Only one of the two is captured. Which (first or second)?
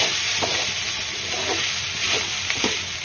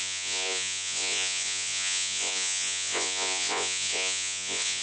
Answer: first